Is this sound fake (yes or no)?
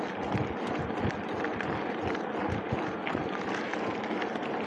no